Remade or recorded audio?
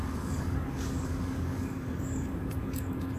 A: remade